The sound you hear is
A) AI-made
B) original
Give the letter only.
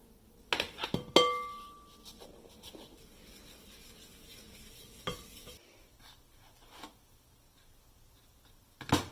B